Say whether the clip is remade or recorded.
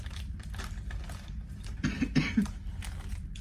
recorded